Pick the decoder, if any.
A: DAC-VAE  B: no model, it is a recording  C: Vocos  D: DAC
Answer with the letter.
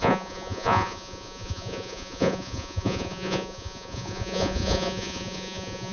C